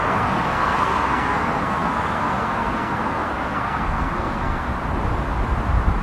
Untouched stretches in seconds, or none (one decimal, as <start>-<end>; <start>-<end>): 4.7-6.0